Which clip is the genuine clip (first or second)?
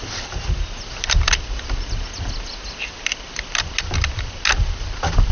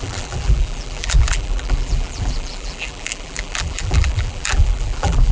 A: first